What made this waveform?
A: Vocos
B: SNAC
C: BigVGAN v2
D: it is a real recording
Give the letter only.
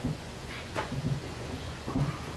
A